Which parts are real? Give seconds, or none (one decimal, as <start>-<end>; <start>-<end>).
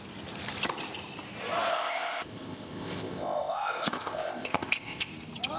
0.0-1.7; 5.1-5.6